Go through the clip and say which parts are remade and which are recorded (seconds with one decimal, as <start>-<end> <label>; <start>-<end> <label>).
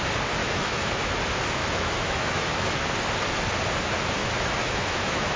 0.0-0.4 recorded; 0.4-1.2 remade; 1.2-1.6 recorded; 1.6-2.8 remade; 2.8-4.2 recorded; 4.2-5.4 remade